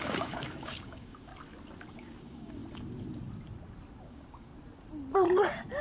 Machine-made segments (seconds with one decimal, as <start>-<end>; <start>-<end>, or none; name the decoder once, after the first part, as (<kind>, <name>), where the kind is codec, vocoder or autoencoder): 0.0-1.3 (codec, DAC); 1.9-2.6; 4.0-4.5